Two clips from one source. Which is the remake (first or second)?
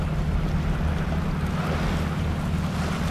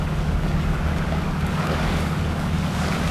second